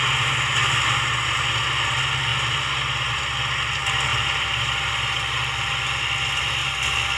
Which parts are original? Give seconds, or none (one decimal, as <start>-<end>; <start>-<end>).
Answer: 0.0-7.2